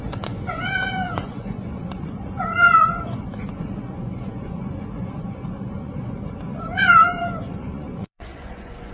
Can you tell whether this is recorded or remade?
remade